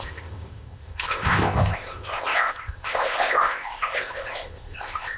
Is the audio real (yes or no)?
no